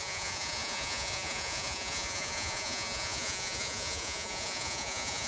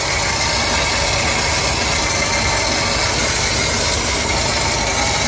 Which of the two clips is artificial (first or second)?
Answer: first